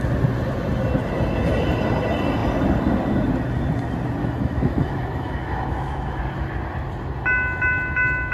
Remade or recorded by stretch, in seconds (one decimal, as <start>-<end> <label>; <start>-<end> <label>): 0.0-4.2 recorded; 4.2-6.2 remade; 6.2-8.3 recorded